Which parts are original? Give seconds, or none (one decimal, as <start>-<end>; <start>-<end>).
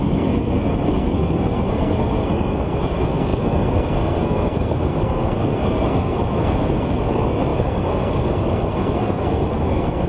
none